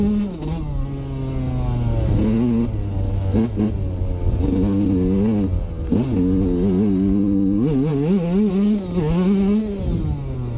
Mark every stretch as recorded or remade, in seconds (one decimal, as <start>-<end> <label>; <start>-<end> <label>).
0.0-10.6 recorded